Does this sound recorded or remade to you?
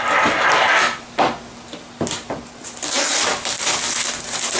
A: recorded